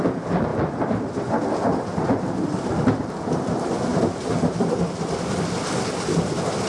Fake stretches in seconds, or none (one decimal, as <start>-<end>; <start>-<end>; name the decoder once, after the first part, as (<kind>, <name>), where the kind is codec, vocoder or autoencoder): none